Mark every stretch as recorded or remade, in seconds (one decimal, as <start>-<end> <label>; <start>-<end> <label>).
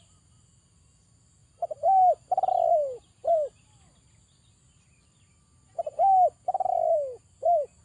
0.0-7.8 recorded